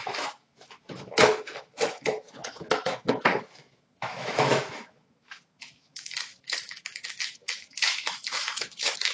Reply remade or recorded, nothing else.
remade